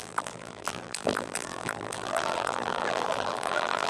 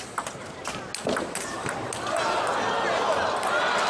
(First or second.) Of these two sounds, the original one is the second